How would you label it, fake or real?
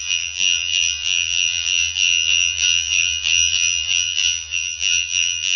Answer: fake